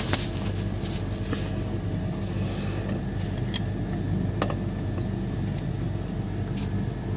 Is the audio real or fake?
real